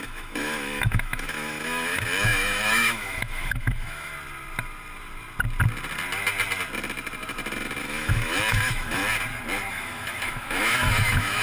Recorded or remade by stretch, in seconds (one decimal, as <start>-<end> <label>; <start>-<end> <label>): 0.0-4.1 remade; 4.1-7.8 recorded; 7.8-9.0 remade; 9.0-9.7 recorded; 9.7-11.4 remade